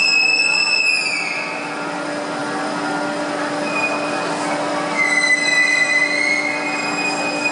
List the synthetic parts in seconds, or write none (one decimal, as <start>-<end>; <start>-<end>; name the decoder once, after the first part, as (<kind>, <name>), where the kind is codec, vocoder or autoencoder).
none